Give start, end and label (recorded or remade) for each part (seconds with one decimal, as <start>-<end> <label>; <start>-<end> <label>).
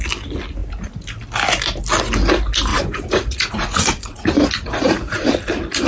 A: 0.0-2.7 recorded; 2.7-5.3 remade; 5.3-5.9 recorded